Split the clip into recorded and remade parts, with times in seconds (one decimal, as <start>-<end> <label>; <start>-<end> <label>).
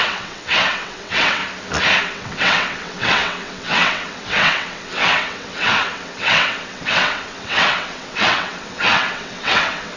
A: 0.0-1.4 remade; 1.4-2.0 recorded; 2.0-10.0 remade